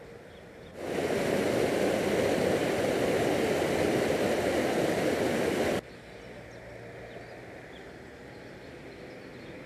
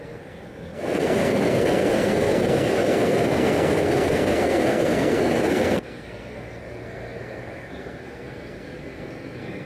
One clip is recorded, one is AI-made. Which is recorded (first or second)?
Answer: first